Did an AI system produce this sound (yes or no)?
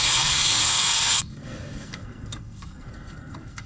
yes